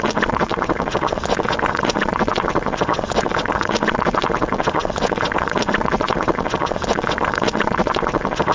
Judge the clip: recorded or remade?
remade